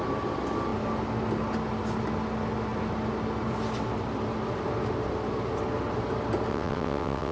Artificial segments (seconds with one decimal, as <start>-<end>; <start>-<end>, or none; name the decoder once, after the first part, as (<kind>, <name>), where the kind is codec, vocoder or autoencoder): 6.5-7.3 (vocoder, WaveNeXt)